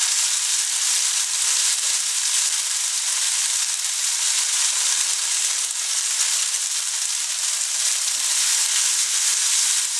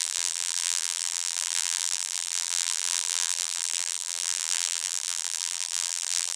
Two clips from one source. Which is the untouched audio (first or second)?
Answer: first